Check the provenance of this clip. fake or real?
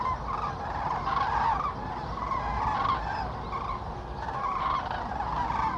real